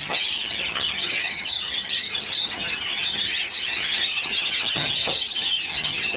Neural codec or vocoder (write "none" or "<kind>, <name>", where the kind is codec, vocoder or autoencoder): vocoder, HiFi-GAN